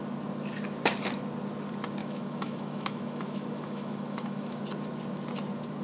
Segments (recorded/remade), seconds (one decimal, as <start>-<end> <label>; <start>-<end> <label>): 0.0-2.0 recorded; 2.0-4.6 remade; 4.6-5.8 recorded